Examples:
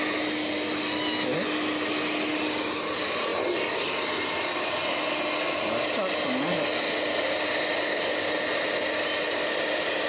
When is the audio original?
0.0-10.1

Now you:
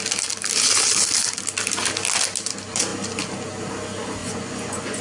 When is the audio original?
0.0-4.2

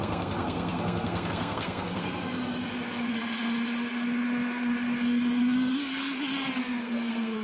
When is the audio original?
2.4-6.8

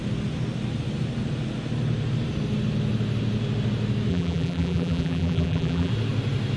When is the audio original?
0.0-4.1; 5.9-6.6

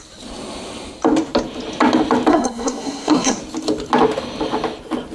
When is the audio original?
0.0-2.3; 3.4-5.1